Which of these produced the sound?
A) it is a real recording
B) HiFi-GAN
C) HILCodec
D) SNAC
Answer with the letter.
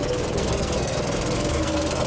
D